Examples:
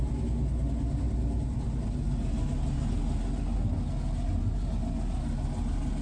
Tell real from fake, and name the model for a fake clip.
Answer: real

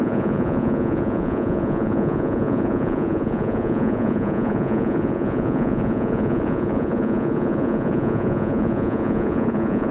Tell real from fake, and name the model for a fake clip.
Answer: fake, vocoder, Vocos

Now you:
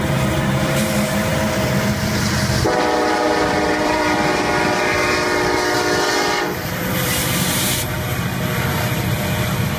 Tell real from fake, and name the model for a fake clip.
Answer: fake, vocoder, BigVGAN v2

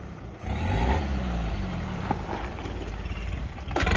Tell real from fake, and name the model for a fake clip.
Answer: real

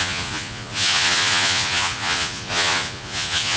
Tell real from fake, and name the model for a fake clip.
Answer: fake, vocoder, Vocos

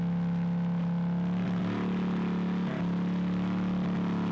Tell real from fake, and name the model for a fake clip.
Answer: real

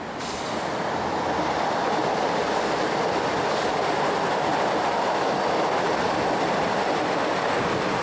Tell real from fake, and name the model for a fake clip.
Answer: real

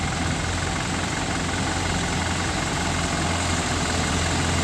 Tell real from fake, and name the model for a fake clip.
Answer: real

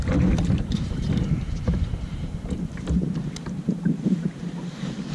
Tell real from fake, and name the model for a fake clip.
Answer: fake, vocoder, BigVGAN v2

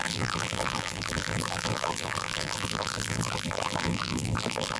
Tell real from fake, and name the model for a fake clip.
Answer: fake, vocoder, BigVGAN v2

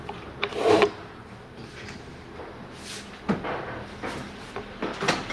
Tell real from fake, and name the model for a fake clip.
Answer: real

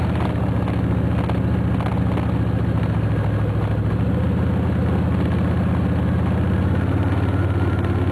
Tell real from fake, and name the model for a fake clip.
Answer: real